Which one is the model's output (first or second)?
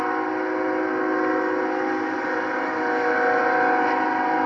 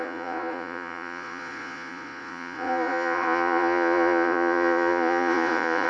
second